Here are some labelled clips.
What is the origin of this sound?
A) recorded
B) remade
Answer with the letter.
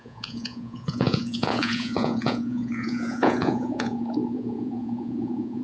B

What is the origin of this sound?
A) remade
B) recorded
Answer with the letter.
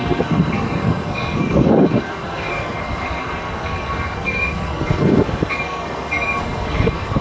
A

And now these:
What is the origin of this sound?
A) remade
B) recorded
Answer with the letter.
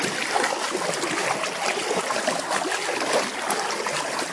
B